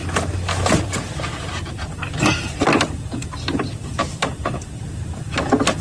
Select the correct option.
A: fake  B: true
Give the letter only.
B